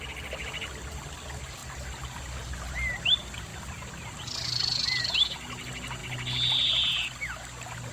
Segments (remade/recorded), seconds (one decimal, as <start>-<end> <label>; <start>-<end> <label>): 0.0-7.9 recorded